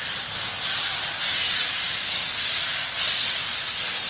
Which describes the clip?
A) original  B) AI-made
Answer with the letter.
A